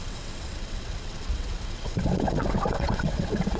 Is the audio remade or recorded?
remade